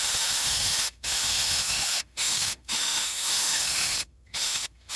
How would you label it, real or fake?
fake